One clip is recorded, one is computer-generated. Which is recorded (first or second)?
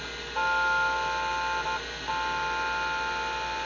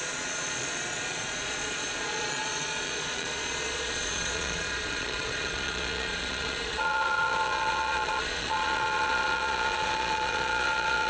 first